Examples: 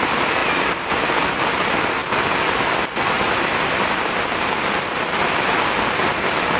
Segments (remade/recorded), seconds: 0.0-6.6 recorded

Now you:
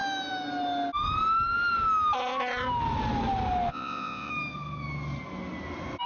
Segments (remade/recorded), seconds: 0.0-3.7 recorded; 3.7-4.3 remade; 4.3-6.1 recorded

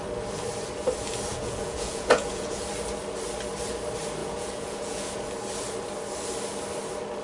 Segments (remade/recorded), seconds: 0.0-1.3 recorded; 1.3-2.6 remade; 2.6-4.2 recorded; 4.2-5.2 remade; 5.2-7.2 recorded

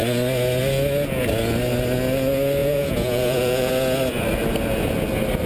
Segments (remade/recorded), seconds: 0.0-2.6 recorded; 2.6-3.7 remade; 3.7-5.5 recorded

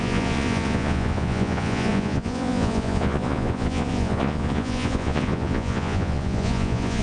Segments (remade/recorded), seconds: 0.0-7.0 remade